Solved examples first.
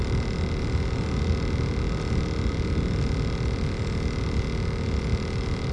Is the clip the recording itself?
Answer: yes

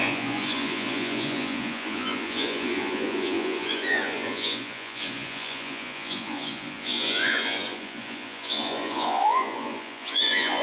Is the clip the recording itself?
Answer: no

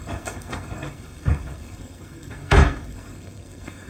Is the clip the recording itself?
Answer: no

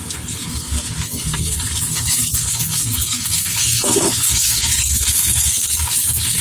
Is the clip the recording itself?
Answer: no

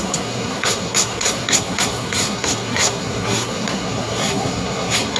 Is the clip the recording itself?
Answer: no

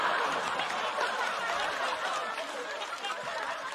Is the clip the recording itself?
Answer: yes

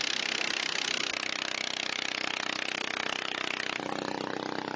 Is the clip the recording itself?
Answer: yes